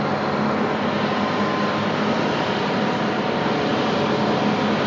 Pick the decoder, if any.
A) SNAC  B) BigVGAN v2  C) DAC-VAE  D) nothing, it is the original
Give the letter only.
D